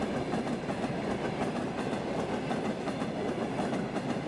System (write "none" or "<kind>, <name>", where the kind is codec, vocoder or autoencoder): none